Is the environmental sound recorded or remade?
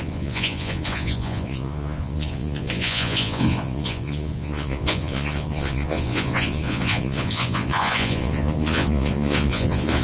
remade